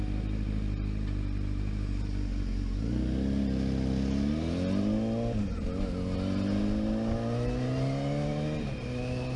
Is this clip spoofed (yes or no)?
no